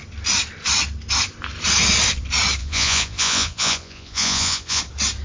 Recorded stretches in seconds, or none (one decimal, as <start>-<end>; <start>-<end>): 0.0-2.6; 4.8-5.2